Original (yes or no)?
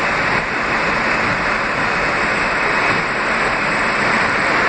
yes